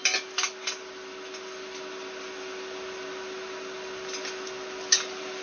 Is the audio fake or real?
real